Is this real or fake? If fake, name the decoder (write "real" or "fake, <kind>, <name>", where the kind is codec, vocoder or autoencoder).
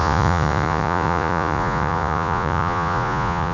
fake, vocoder, Vocos